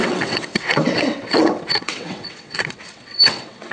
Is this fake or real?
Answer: fake